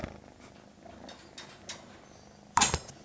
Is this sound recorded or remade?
recorded